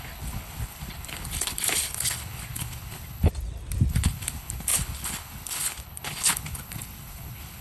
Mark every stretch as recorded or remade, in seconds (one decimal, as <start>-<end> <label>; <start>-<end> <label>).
0.0-3.3 remade; 3.3-3.9 recorded; 3.9-7.6 remade